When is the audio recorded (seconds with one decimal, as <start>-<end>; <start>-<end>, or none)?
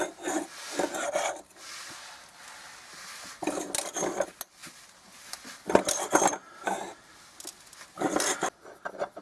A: 0.0-9.2